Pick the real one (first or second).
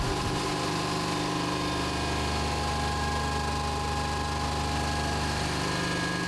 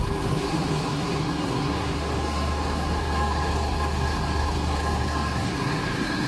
first